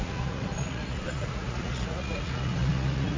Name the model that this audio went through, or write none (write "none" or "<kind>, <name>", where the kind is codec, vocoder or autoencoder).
vocoder, Vocos